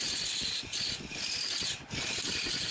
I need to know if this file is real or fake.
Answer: real